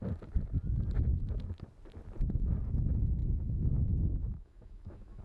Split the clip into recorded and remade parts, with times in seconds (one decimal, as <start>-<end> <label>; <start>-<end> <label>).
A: 0.0-3.2 recorded; 3.2-5.2 remade